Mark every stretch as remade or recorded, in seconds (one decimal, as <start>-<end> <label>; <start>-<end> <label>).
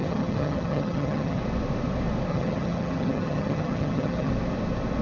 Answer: 0.0-1.4 remade; 1.4-2.3 recorded; 2.3-4.3 remade; 4.3-5.0 recorded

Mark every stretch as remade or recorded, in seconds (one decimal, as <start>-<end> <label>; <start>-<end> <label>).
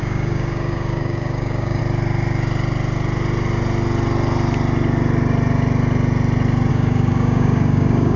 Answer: 0.0-1.8 remade; 1.8-6.7 recorded; 6.7-8.2 remade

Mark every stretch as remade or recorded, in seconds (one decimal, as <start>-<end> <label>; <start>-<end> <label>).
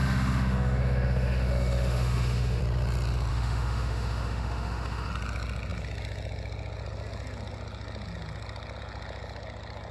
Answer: 0.0-2.6 remade; 2.6-3.3 recorded; 3.3-5.1 remade; 5.1-9.9 recorded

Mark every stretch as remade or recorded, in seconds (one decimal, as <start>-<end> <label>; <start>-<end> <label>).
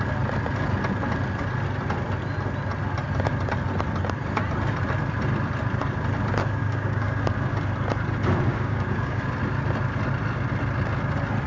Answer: 0.0-6.4 recorded; 6.4-7.2 remade; 7.2-8.5 recorded; 8.5-9.2 remade; 9.2-11.5 recorded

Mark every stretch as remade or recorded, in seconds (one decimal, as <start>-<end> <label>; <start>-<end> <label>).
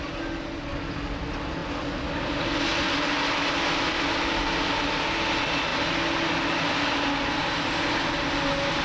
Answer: 0.0-8.8 recorded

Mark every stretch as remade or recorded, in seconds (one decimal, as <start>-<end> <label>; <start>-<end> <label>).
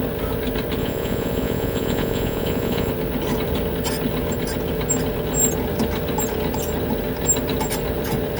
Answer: 0.0-0.8 recorded; 0.8-2.9 remade; 2.9-8.4 recorded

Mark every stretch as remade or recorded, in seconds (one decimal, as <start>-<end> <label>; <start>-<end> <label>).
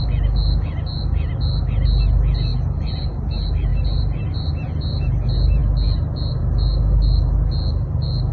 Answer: 0.0-8.3 recorded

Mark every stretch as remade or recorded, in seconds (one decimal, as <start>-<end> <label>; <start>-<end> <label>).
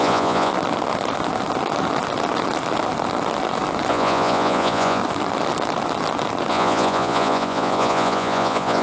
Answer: 0.0-0.5 remade; 0.5-3.9 recorded; 3.9-5.0 remade; 5.0-6.5 recorded; 6.5-8.8 remade